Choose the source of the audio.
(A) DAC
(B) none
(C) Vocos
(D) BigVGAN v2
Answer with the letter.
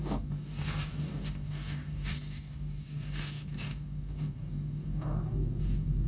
A